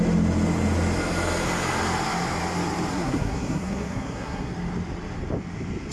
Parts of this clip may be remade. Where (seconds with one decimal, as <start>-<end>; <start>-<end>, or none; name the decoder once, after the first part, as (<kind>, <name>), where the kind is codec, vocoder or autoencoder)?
2.9-4.5 (codec, SNAC)